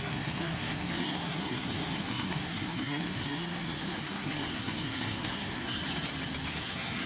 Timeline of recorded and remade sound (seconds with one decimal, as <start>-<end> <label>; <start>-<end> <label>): 0.0-5.8 remade; 5.8-6.5 recorded; 6.5-7.1 remade